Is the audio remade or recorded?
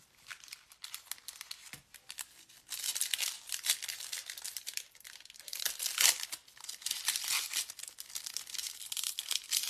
remade